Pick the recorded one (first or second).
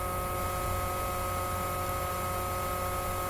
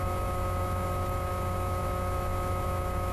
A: first